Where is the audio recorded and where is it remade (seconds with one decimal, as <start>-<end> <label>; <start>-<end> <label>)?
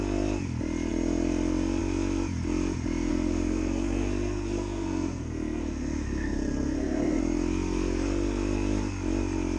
0.0-3.1 recorded; 3.1-7.2 remade; 7.2-9.6 recorded